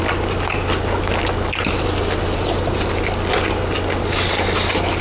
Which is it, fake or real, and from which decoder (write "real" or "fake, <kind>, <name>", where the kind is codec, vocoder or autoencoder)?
real